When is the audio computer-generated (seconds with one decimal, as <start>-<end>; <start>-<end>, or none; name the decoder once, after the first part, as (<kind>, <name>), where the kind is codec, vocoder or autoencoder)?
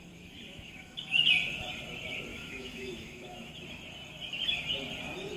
0.5-1.3 (autoencoder, DAC-VAE); 2.3-3.5